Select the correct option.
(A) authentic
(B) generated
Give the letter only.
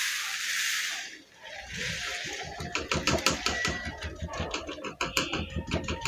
B